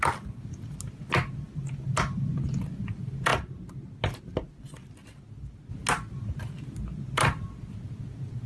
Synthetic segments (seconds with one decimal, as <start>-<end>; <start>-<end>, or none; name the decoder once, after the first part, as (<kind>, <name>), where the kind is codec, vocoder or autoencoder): none